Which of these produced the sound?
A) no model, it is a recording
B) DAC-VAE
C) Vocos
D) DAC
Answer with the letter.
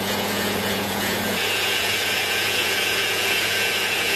C